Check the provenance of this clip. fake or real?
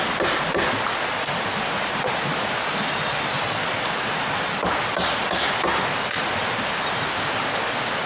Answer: real